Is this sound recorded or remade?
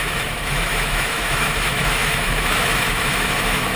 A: remade